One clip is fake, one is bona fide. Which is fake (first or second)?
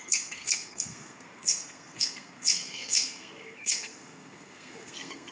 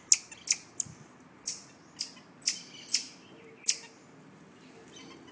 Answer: first